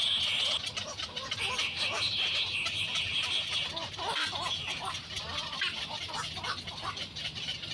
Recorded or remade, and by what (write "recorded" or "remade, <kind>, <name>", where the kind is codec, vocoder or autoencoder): recorded